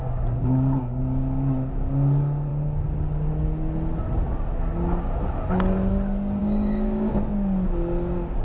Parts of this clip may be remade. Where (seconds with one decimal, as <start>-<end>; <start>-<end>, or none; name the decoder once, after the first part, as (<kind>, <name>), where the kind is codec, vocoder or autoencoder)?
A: 0.5-1.0 (codec, DAC); 6.4-7.1